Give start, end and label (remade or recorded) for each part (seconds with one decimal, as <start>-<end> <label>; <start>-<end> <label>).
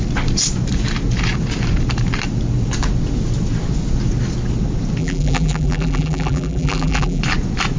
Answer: 0.0-5.0 recorded; 5.0-7.2 remade; 7.2-7.8 recorded